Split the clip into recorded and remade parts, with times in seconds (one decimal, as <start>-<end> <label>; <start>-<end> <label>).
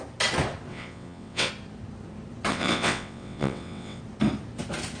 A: 0.0-0.7 recorded; 0.7-1.5 remade; 1.5-2.5 recorded; 2.5-4.0 remade; 4.0-5.0 recorded